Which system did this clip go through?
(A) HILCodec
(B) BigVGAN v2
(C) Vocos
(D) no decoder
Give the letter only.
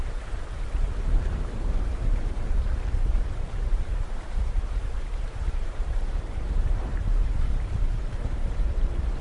B